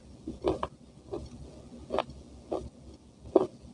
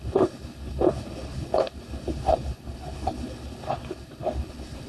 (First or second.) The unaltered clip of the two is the first